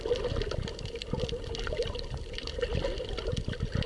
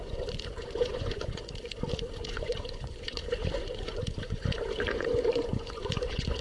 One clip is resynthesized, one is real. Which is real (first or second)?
first